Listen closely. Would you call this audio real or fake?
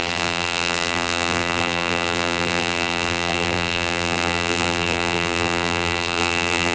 fake